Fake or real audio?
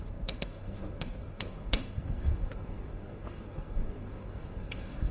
fake